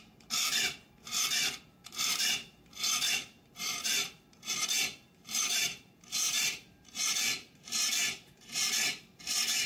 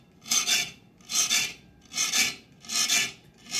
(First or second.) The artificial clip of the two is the first